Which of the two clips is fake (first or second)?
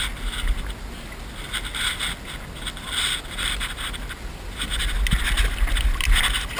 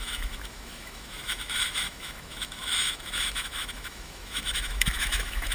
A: second